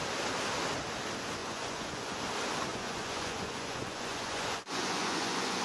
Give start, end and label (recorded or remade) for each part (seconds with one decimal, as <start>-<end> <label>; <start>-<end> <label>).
0.0-1.4 recorded; 1.4-2.2 remade; 2.2-2.7 recorded; 2.7-5.6 remade